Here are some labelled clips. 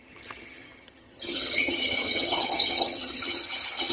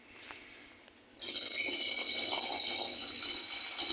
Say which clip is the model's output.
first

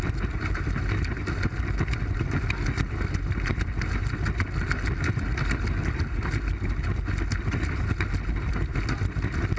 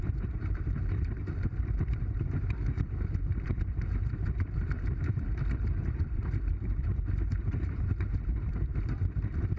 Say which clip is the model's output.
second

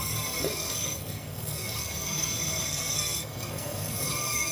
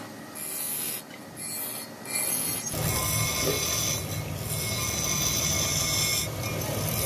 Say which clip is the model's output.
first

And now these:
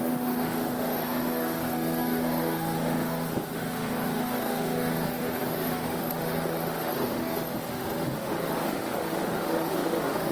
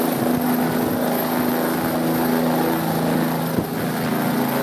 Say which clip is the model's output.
first